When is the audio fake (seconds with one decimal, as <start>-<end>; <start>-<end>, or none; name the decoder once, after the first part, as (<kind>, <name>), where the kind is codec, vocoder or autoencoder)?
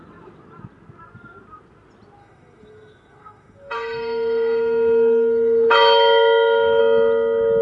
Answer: 2.2-6.8 (autoencoder, DAC-VAE)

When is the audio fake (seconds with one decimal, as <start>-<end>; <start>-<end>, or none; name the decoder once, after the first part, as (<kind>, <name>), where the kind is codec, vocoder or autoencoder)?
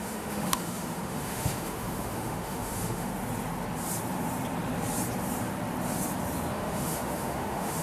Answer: 0.0-3.1 (autoencoder, DAC-VAE); 6.5-7.8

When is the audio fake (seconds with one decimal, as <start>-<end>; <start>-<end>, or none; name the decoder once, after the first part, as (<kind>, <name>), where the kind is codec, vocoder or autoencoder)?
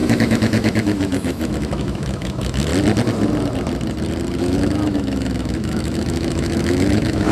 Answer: 0.0-2.7 (autoencoder, DAC-VAE); 4.4-7.3